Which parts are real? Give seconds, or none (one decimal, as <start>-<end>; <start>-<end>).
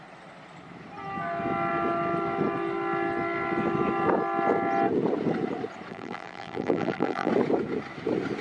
0.0-5.9; 7.3-8.4